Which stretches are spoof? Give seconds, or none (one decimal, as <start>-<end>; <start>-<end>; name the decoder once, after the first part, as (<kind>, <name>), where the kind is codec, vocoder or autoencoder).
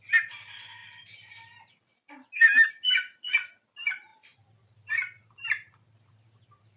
none